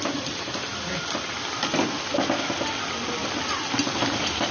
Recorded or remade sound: recorded